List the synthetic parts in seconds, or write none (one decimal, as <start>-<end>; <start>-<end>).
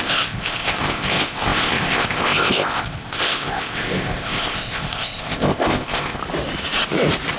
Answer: 0.0-6.2